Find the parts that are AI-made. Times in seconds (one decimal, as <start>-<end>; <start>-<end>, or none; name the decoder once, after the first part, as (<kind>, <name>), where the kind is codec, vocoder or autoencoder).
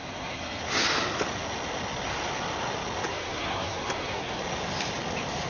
0.0-0.6 (codec, SNAC); 3.1-4.4